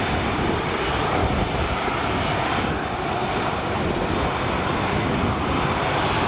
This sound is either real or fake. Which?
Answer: real